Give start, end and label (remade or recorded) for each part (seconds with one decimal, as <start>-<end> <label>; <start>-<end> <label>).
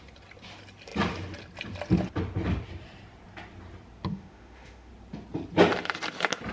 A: 0.0-4.1 recorded; 4.1-4.9 remade; 4.9-6.5 recorded